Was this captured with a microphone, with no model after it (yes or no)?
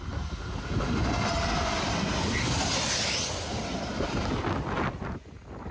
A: yes